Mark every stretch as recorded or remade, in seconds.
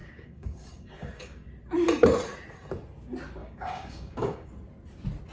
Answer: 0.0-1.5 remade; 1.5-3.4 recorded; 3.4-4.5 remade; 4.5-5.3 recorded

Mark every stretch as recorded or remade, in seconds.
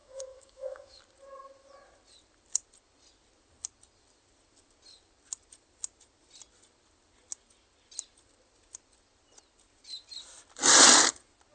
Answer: 0.0-1.0 remade; 1.0-11.5 recorded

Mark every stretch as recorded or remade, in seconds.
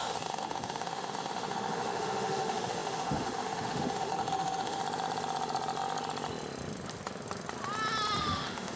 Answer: 0.0-4.8 remade; 4.8-8.2 recorded; 8.2-8.8 remade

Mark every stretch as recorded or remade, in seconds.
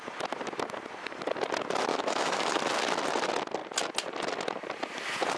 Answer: 0.0-1.9 recorded; 1.9-2.6 remade; 2.6-5.4 recorded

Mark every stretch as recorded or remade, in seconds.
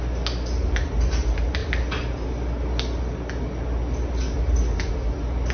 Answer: 0.0-5.5 recorded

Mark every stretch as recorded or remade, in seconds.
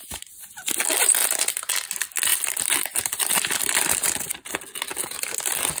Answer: 0.0-1.2 recorded; 1.2-1.7 remade; 1.7-2.3 recorded; 2.3-4.5 remade; 4.5-5.8 recorded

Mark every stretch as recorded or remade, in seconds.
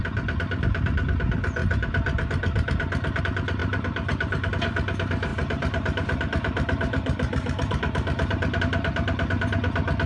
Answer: 0.0-1.6 recorded; 1.6-3.2 remade; 3.2-3.6 recorded; 3.6-4.5 remade; 4.5-5.3 recorded; 5.3-8.6 remade; 8.6-10.1 recorded